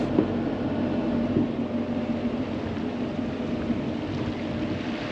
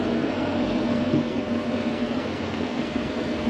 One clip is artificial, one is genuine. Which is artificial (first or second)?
second